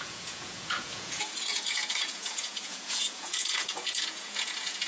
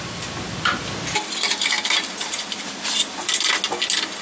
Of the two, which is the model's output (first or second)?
first